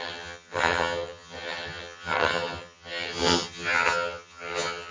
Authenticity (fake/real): fake